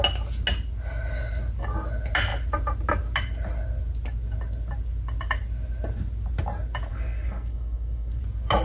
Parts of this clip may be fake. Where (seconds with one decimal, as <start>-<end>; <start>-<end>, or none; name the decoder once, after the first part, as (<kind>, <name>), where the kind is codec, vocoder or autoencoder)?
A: 6.9-8.2 (codec, SNAC)